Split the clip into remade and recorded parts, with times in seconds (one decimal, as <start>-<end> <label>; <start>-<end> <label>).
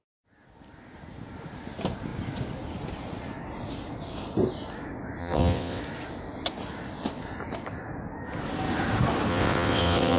0.0-5.2 recorded; 5.2-5.8 remade; 5.8-9.3 recorded; 9.3-10.2 remade